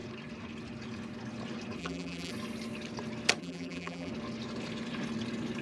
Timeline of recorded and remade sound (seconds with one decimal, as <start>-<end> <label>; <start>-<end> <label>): 0.0-1.8 recorded; 1.8-2.3 remade; 2.3-3.4 recorded; 3.4-4.1 remade; 4.1-5.6 recorded